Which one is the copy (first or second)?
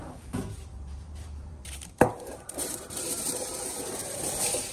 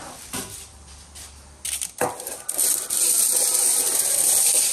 first